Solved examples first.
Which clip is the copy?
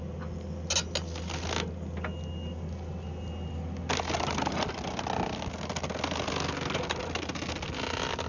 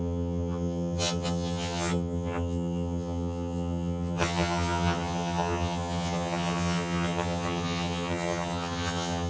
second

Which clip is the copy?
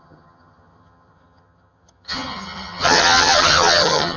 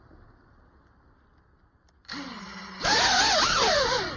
first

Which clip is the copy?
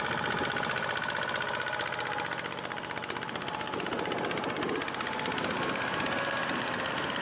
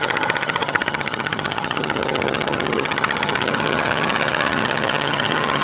second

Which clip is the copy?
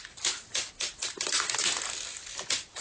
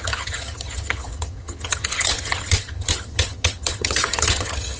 second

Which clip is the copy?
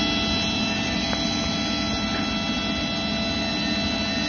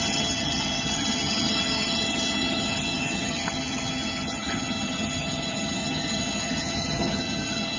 second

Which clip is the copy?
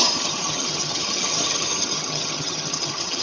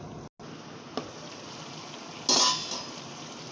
first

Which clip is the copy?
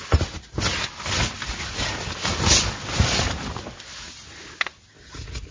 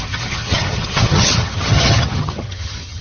second